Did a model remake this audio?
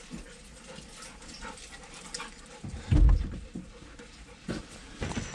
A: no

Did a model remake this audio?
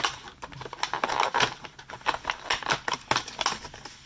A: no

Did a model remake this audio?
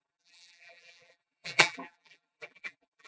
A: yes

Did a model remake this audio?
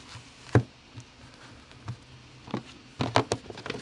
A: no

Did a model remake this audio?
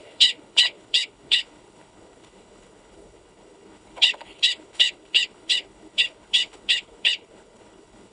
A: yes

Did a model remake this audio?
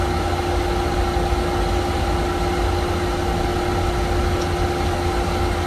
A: no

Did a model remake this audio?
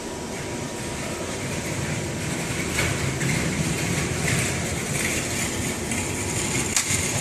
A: yes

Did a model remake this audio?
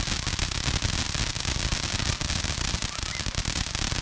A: no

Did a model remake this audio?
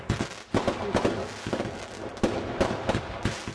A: no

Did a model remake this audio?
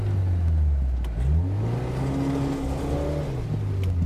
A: no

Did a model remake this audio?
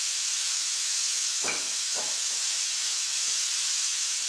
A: yes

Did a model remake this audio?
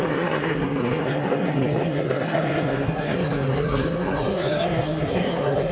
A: yes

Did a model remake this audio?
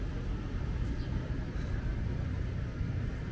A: yes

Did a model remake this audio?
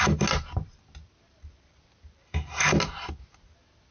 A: no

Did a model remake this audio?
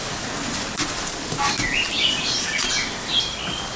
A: no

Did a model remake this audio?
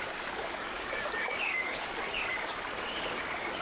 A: yes